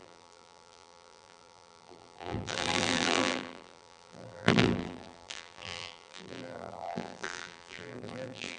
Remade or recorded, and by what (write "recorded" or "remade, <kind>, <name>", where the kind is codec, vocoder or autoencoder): remade, vocoder, BigVGAN v2